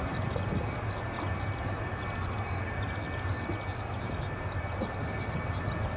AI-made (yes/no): no